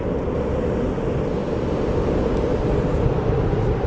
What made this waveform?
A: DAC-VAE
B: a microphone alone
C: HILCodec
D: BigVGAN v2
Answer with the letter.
D